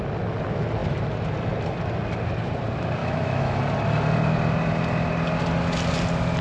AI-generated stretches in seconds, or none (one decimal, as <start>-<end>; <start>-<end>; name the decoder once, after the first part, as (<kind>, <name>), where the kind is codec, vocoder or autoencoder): 3.0-3.6 (autoencoder, DAC-VAE)